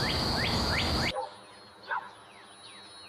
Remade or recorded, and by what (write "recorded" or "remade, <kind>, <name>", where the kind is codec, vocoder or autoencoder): recorded